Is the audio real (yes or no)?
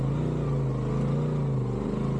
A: yes